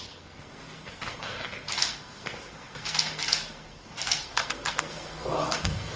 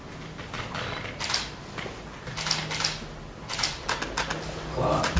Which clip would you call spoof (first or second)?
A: first